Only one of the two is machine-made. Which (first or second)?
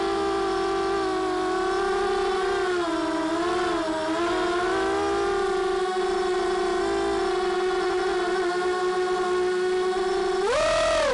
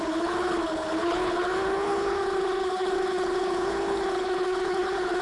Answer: second